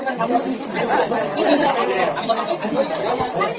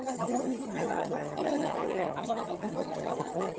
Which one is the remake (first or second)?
second